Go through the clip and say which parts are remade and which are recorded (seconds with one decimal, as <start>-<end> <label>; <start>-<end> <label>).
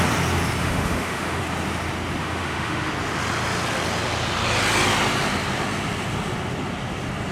0.0-0.6 recorded; 0.6-1.4 remade; 1.4-2.2 recorded; 2.2-2.9 remade; 2.9-7.3 recorded